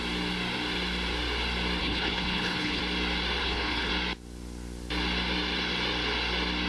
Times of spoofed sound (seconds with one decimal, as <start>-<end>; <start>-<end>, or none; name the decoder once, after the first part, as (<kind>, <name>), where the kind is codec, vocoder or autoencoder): 1.8-2.8 (codec, HILCodec); 3.4-3.9